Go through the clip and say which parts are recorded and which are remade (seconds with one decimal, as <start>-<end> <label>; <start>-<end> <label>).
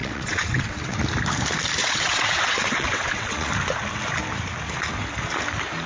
0.0-1.0 remade; 1.0-1.8 recorded; 1.8-3.5 remade; 3.5-5.9 recorded